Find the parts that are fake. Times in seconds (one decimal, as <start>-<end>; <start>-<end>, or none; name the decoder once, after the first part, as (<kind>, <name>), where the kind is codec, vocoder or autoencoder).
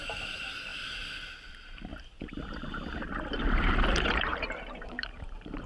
0.0-0.7 (vocoder, BigVGAN v2); 1.5-1.9; 3.4-4.3; 4.8-5.7